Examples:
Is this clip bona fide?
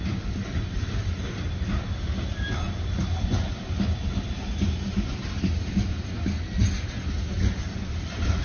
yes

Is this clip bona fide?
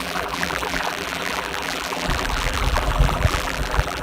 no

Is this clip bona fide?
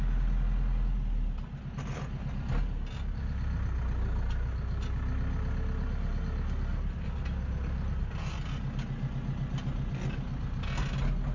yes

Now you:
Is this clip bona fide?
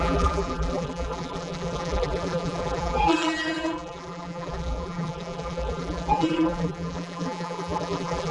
no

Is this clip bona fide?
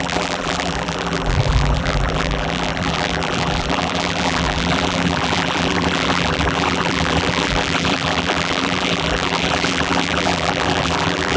no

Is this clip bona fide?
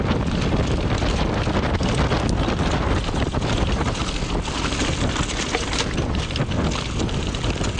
yes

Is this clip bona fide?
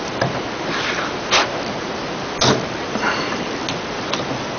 yes